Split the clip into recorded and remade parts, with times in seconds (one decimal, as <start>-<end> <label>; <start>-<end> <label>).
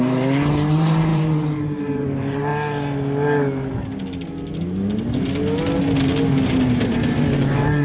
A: 0.0-2.5 remade; 2.5-6.8 recorded; 6.8-7.8 remade